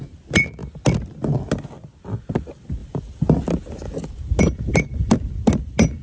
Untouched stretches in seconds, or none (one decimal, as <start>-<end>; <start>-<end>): 0.0-6.0